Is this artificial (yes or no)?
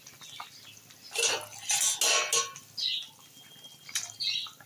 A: no